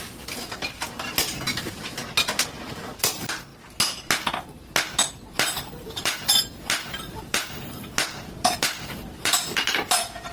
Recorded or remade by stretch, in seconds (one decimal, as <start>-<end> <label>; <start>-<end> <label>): 0.0-2.0 remade; 2.0-2.8 recorded; 2.8-3.5 remade; 3.5-5.3 recorded; 5.3-10.3 remade

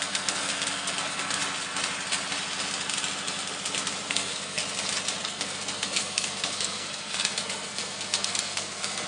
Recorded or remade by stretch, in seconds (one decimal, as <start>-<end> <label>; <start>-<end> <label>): 0.0-1.4 remade; 1.4-4.1 recorded; 4.1-4.6 remade; 4.6-5.2 recorded; 5.2-9.1 remade